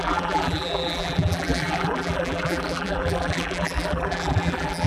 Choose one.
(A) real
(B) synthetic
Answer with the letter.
B